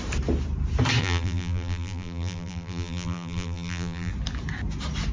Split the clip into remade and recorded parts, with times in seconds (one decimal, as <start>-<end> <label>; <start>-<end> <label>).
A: 0.0-1.0 recorded; 1.0-4.1 remade; 4.1-5.1 recorded